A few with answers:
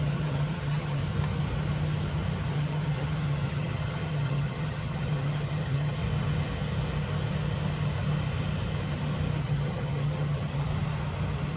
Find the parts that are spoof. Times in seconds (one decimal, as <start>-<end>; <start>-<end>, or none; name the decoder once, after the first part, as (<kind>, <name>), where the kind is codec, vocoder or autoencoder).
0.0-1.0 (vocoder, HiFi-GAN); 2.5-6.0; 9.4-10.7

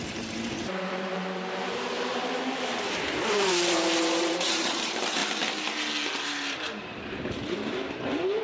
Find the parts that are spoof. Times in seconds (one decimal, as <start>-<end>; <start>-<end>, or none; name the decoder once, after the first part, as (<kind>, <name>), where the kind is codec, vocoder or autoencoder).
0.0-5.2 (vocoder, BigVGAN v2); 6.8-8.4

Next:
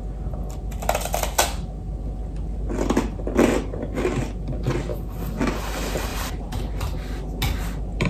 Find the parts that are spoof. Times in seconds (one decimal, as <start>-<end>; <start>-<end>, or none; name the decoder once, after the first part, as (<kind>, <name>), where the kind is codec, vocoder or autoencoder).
6.1-6.7 (vocoder, BigVGAN v2)

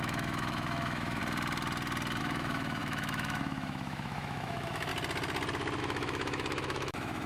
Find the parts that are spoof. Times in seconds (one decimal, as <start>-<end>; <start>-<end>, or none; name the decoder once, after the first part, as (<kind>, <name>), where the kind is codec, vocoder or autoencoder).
0.0-1.2 (autoencoder, DAC-VAE); 2.2-4.9; 5.8-7.3

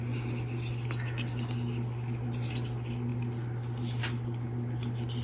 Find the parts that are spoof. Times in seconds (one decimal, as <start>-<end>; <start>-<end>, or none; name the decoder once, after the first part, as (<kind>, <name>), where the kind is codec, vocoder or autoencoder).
none

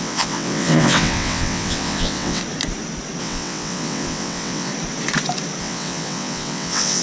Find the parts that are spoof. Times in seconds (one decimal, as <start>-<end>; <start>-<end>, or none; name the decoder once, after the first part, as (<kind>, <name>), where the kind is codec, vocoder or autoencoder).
0.0-2.4 (vocoder, WaveNeXt); 3.2-4.7; 5.6-7.0

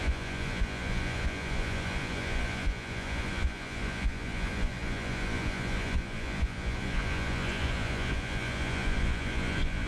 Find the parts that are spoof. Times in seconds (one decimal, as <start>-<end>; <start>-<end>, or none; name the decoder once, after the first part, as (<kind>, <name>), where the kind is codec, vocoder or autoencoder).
0.0-9.9 (vocoder, Vocos)